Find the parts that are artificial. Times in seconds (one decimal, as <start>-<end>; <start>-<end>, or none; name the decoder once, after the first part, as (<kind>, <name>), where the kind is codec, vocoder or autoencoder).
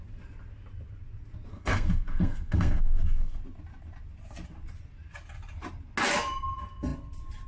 1.5-3.4 (codec, SNAC)